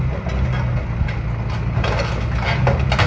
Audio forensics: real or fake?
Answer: real